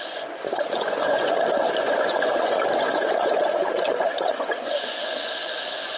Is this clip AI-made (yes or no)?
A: yes